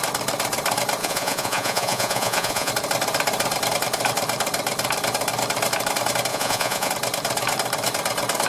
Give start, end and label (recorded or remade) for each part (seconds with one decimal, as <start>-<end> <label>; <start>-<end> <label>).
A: 0.0-1.0 recorded; 1.0-2.7 remade; 2.7-6.3 recorded; 6.3-6.9 remade; 6.9-8.5 recorded